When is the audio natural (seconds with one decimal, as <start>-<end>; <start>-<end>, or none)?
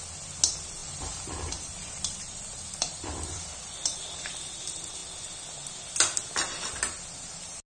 0.0-0.8; 4.3-7.7